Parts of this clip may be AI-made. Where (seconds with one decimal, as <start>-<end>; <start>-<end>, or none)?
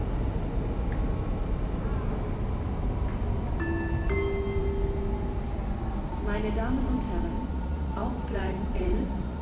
7.5-9.4